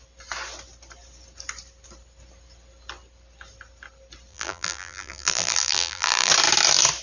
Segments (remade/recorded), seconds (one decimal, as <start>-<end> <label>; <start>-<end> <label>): 0.0-4.3 recorded; 4.3-6.3 remade; 6.3-7.0 recorded